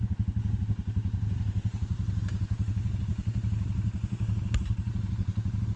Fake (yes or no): no